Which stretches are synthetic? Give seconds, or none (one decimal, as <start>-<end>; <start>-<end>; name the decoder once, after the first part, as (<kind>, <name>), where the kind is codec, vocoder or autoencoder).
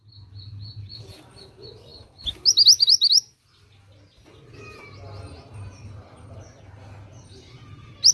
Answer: none